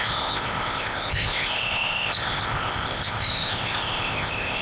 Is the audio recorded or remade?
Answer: remade